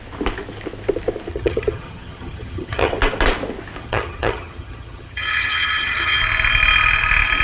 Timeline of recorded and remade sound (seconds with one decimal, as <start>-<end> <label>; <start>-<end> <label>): 0.0-1.3 recorded; 1.3-2.9 remade; 2.9-3.8 recorded; 3.8-6.2 remade; 6.2-7.4 recorded